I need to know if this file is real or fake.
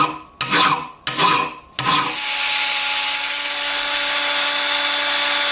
real